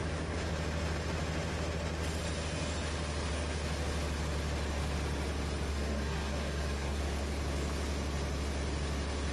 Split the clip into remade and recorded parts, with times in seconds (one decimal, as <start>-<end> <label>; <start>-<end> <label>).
0.0-5.7 recorded; 5.7-7.0 remade; 7.0-9.3 recorded

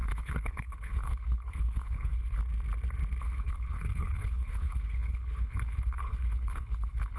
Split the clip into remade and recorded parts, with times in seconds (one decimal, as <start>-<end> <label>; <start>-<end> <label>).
0.0-2.4 remade; 2.4-3.2 recorded; 3.2-7.2 remade

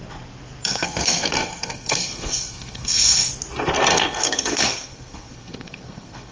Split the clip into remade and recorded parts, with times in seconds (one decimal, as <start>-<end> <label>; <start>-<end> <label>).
0.0-0.7 recorded; 0.7-3.3 remade; 3.3-3.9 recorded; 3.9-6.3 remade

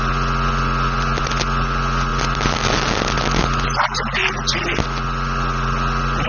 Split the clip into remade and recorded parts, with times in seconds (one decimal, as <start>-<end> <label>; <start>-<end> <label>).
0.0-6.3 recorded